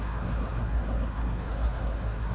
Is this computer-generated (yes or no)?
yes